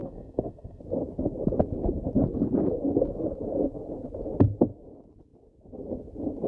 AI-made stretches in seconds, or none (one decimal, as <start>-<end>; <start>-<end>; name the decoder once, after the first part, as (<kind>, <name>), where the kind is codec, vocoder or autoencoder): 0.0-0.8 (codec, SNAC)